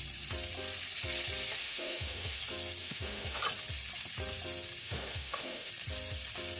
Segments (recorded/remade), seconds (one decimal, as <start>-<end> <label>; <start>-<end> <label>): 0.0-1.6 recorded; 1.6-2.4 remade; 2.4-2.8 recorded; 2.8-3.4 remade; 3.4-4.8 recorded; 4.8-5.7 remade; 5.7-6.6 recorded